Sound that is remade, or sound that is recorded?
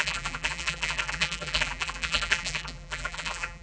remade